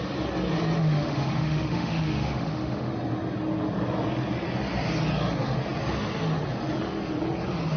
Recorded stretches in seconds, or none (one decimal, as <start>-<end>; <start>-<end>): 0.0-0.8; 2.9-7.8